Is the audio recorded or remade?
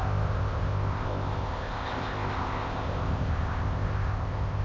remade